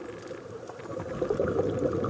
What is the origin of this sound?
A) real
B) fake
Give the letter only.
B